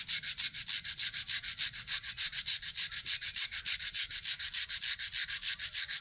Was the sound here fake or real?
real